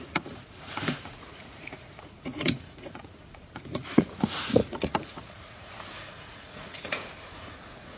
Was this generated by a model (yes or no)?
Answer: yes